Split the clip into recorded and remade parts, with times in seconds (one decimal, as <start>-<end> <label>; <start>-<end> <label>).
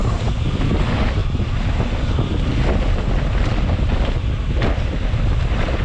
0.0-0.5 recorded; 0.5-1.2 remade; 1.2-4.7 recorded; 4.7-5.8 remade